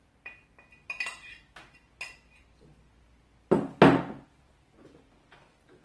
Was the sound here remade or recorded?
recorded